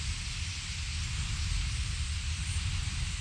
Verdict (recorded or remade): recorded